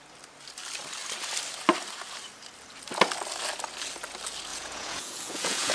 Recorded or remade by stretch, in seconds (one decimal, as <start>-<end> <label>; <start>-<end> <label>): 0.0-4.5 recorded; 4.5-5.7 remade